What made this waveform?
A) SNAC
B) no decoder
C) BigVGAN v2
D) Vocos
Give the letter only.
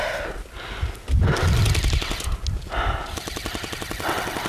B